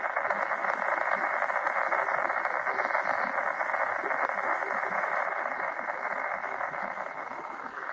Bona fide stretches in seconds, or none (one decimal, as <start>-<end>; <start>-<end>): 0.0-0.6; 1.3-4.5